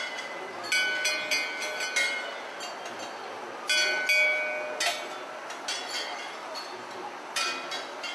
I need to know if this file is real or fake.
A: real